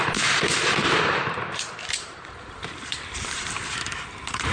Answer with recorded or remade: remade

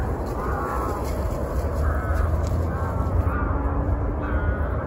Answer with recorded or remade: recorded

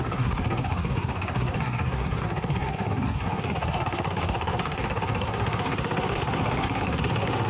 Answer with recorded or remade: remade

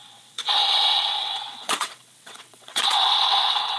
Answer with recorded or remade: remade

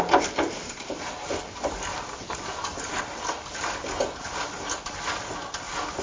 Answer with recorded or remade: recorded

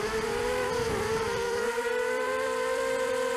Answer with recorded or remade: remade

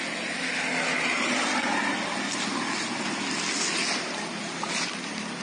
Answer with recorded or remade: recorded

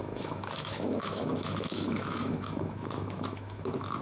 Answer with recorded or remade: remade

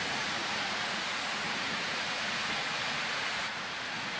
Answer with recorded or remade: remade